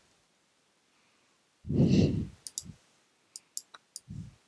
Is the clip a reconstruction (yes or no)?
no